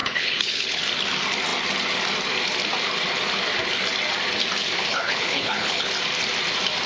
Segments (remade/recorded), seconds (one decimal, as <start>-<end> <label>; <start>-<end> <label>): 0.0-0.8 remade; 0.8-4.9 recorded; 4.9-5.9 remade; 5.9-6.9 recorded